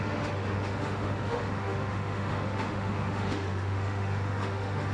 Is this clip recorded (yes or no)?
no